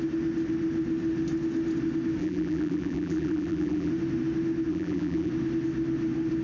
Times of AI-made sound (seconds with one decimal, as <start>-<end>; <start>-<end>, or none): 2.2-3.9; 4.7-5.3